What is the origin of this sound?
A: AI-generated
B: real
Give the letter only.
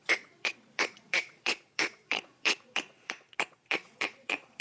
A